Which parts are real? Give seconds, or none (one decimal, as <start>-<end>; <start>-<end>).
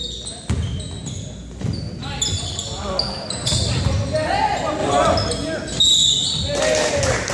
0.0-7.3